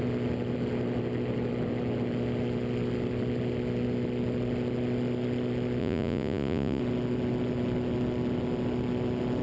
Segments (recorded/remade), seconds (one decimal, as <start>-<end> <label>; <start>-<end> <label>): 0.0-5.8 recorded; 5.8-6.8 remade; 6.8-9.4 recorded